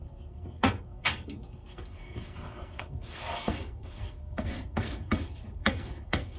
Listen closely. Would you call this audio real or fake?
fake